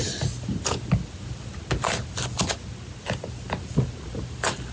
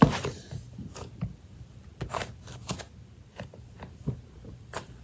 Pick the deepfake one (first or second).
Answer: second